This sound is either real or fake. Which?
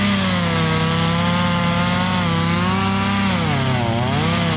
real